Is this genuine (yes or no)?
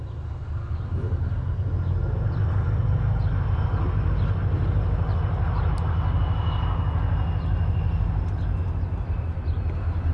yes